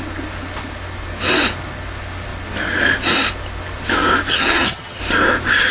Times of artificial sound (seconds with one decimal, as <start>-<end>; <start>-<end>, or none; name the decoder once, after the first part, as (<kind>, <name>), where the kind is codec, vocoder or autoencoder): 4.3-5.0 (vocoder, HiFi-GAN)